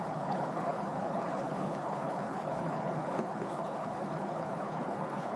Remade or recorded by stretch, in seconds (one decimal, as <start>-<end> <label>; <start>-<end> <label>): 0.0-5.4 remade